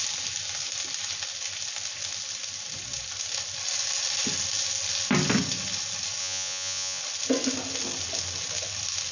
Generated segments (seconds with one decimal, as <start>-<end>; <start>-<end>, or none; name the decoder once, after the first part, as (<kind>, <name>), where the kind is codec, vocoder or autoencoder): 6.2-7.0 (vocoder, Vocos)